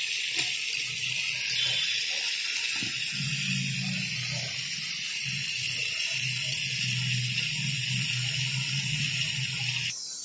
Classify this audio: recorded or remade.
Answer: recorded